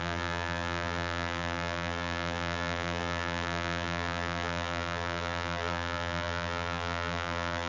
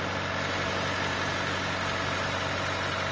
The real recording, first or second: second